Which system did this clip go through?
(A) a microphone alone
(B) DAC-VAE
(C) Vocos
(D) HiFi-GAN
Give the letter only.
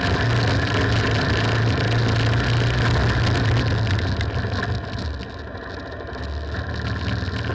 A